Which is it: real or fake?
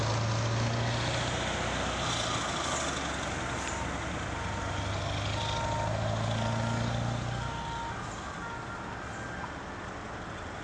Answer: real